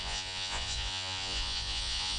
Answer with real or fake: fake